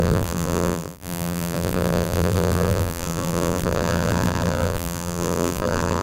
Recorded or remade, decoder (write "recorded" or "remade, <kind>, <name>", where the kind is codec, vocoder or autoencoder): remade, vocoder, BigVGAN v2